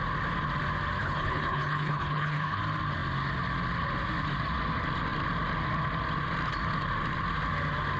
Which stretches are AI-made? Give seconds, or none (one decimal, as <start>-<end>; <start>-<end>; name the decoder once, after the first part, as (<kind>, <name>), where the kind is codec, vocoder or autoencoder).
1.0-2.6 (codec, HILCodec)